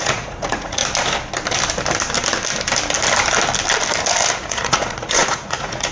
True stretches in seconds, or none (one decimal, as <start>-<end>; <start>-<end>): 0.8-4.3